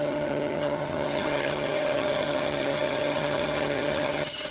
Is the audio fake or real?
fake